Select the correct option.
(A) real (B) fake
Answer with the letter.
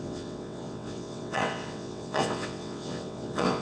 B